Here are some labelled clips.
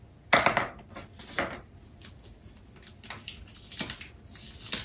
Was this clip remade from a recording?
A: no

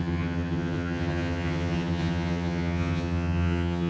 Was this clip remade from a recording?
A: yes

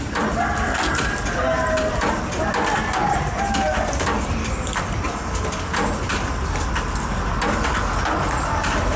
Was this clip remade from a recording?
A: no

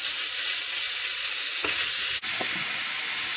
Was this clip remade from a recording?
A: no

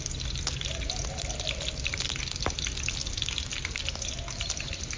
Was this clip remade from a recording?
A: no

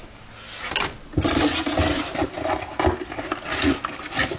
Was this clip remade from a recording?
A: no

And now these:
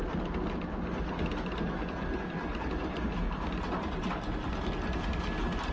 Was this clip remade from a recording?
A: no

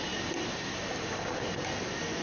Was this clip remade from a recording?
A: no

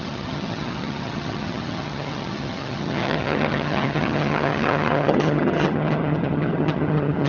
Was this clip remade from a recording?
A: yes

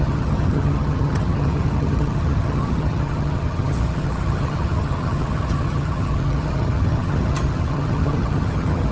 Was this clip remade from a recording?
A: yes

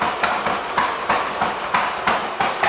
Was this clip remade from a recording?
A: no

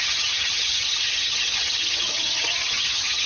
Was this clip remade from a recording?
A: yes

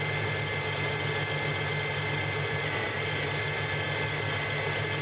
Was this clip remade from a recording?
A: no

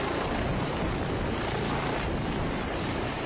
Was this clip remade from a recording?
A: no